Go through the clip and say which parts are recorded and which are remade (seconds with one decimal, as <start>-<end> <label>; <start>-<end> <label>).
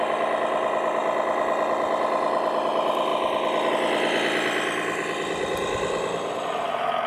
0.0-7.1 recorded